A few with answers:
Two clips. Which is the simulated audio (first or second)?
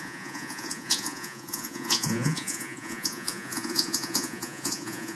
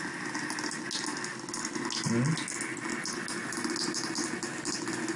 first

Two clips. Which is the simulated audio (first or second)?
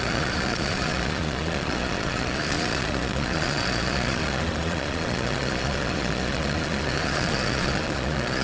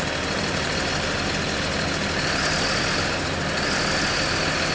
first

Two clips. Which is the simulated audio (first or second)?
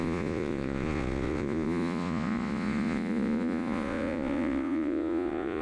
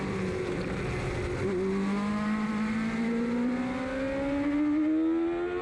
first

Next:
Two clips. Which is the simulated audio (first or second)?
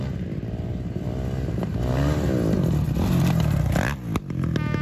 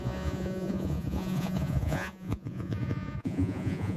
second